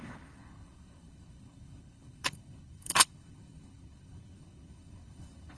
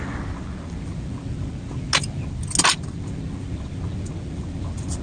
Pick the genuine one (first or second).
second